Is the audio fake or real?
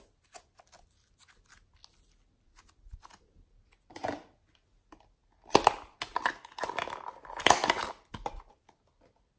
real